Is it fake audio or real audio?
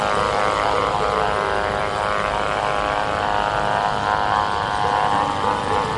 fake